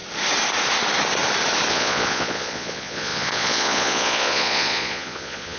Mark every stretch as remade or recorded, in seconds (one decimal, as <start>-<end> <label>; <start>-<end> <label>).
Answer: 0.0-1.7 recorded; 1.7-5.6 remade